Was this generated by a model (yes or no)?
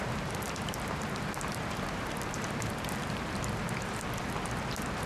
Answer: yes